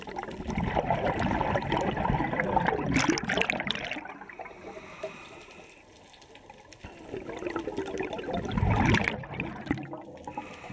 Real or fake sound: real